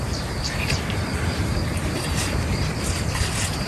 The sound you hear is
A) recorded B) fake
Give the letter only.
B